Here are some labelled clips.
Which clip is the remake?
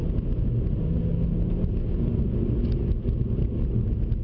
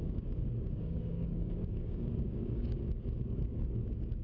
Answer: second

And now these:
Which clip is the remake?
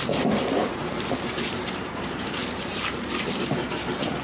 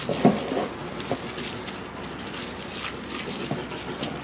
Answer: first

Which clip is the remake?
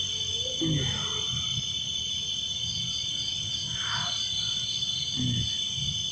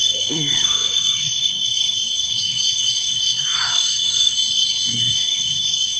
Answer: second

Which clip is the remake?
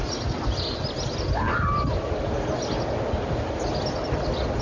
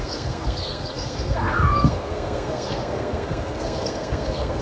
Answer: second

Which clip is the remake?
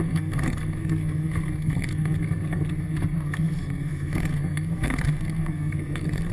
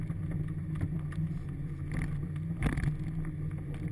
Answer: first